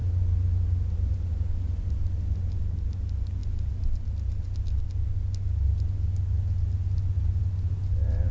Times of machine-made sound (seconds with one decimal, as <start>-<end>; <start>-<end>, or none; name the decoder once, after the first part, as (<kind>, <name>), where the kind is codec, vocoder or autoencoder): none